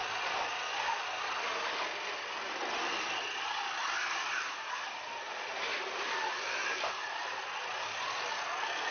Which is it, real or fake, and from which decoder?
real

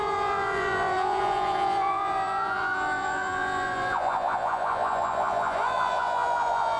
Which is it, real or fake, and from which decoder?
fake, vocoder, Vocos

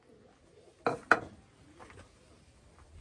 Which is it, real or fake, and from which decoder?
real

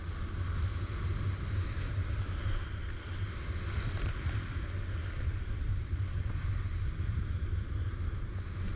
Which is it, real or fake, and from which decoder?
real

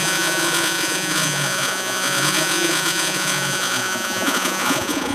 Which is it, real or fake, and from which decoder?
fake, vocoder, Vocos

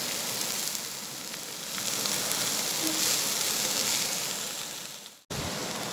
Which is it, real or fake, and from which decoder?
real